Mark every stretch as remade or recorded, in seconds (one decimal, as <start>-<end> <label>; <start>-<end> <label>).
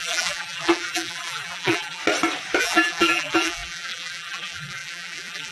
0.0-2.0 remade; 2.0-2.6 recorded; 2.6-5.5 remade